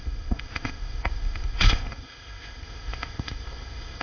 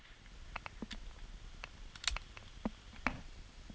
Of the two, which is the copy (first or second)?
first